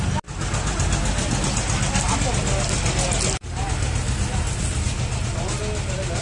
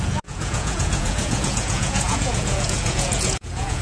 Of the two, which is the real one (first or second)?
first